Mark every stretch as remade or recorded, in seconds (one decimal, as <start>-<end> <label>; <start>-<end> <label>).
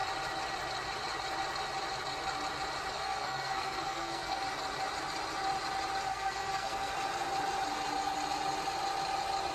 0.0-2.9 recorded; 2.9-4.4 remade; 4.4-6.1 recorded; 6.1-6.9 remade; 6.9-9.5 recorded